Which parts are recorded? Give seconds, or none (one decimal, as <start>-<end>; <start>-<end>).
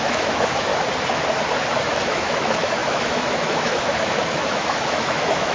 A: 0.7-1.9